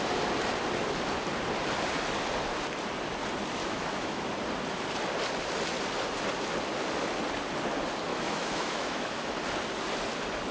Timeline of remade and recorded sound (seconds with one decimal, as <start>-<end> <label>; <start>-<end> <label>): 0.0-3.6 recorded; 3.6-4.2 remade; 4.2-8.1 recorded; 8.1-9.3 remade; 9.3-10.5 recorded

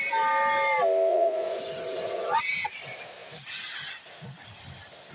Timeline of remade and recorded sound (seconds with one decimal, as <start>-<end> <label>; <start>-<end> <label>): 0.0-1.1 recorded; 1.1-2.4 remade; 2.4-5.1 recorded